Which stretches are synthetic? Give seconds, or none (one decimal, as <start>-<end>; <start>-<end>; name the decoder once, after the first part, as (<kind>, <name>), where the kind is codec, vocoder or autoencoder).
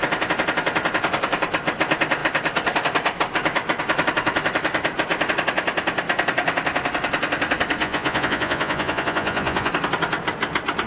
7.8-9.7 (vocoder, Vocos)